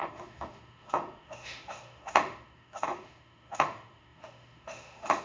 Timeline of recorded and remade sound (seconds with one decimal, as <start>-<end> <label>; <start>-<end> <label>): 0.0-5.2 remade